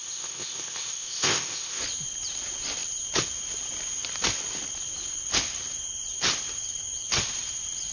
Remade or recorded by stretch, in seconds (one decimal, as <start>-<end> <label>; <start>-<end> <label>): 0.0-1.8 remade; 1.8-7.9 recorded